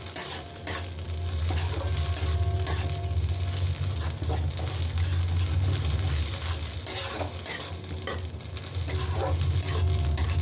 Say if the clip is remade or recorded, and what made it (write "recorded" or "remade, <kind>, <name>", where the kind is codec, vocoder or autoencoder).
recorded